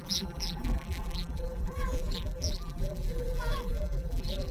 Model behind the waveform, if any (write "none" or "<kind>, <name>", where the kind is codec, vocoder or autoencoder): vocoder, BigVGAN v2